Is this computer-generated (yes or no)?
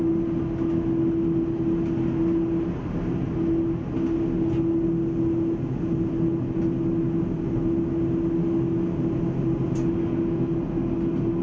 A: no